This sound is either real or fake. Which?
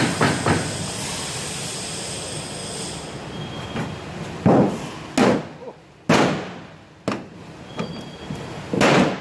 real